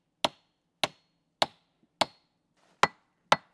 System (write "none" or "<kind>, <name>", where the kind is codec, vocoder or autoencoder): none